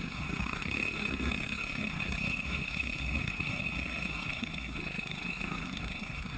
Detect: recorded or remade remade